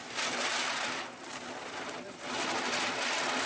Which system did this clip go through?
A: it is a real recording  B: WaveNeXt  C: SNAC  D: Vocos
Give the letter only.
A